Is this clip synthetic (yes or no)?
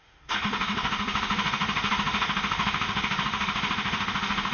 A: yes